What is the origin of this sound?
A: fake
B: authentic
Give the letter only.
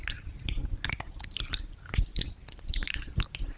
B